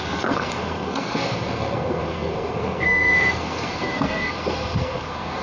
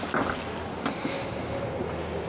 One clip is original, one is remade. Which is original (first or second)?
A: second